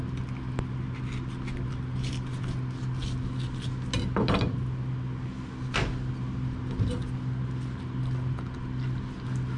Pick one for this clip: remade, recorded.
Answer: recorded